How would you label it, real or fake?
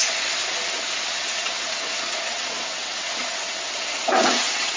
fake